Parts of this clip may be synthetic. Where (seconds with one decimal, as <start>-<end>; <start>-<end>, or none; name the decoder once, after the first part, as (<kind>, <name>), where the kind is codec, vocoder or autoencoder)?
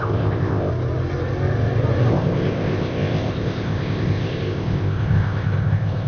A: 0.0-0.7 (codec, ZipCodec); 2.1-6.1